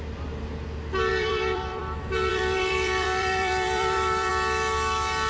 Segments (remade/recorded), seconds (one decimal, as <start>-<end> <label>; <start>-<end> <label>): 0.0-1.1 recorded; 1.1-4.3 remade; 4.3-5.3 recorded